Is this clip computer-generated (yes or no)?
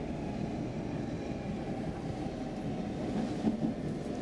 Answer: no